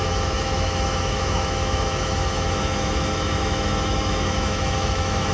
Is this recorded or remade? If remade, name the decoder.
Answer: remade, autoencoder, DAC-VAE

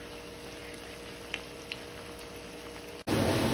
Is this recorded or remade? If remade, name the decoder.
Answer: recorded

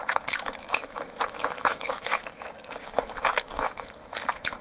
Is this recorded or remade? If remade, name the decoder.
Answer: remade, autoencoder, DAC-VAE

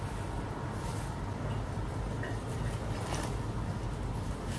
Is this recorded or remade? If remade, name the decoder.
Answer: recorded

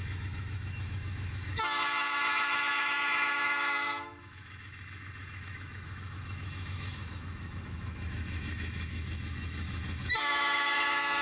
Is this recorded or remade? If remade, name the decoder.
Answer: remade, autoencoder, DAC-VAE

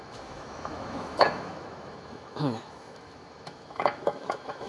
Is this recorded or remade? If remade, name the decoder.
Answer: remade, autoencoder, DAC-VAE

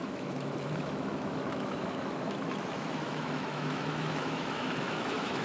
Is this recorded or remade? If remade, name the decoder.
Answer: remade, autoencoder, DAC-VAE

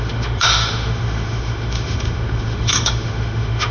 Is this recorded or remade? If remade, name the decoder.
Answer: remade, autoencoder, DAC-VAE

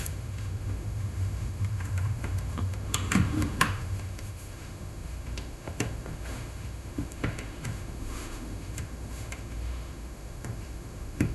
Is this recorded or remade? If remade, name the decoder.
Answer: remade, autoencoder, DAC-VAE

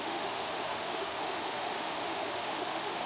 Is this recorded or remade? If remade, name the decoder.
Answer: remade, autoencoder, DAC-VAE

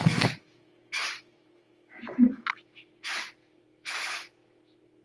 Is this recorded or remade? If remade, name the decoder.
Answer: remade, autoencoder, DAC-VAE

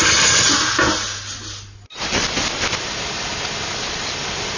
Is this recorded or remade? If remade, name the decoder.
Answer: recorded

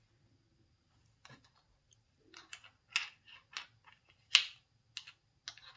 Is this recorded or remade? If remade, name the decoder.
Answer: recorded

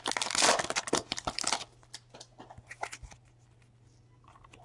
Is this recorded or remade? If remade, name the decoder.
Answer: recorded